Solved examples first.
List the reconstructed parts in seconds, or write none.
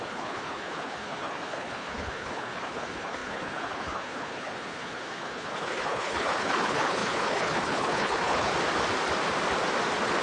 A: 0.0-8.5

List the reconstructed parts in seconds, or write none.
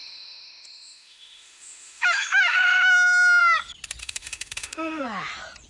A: 0.0-3.4; 4.0-5.0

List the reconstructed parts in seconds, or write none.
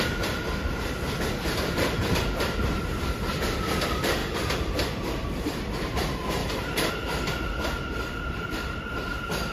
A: 4.2-5.7; 6.4-6.9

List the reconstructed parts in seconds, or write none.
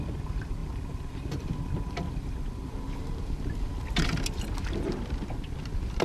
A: 0.6-4.2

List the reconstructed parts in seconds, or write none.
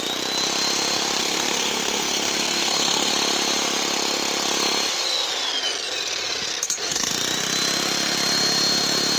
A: 1.2-3.1; 6.5-7.1